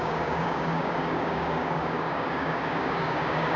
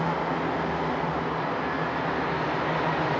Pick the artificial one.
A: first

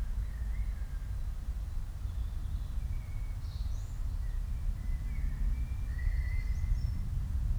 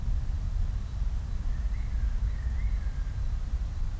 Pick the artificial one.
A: second